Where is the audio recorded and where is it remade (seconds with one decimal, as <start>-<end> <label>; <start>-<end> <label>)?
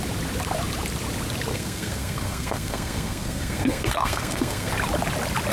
0.0-1.5 recorded; 1.5-4.7 remade; 4.7-5.5 recorded